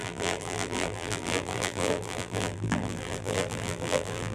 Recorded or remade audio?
remade